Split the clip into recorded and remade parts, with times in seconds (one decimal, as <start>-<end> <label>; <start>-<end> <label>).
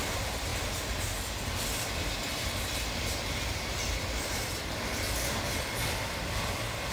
0.0-6.9 remade